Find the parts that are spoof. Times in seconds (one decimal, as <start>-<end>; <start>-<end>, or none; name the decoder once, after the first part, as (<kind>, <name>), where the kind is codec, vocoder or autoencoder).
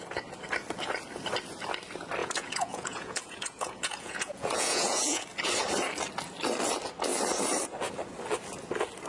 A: 2.2-5.2 (vocoder, Vocos)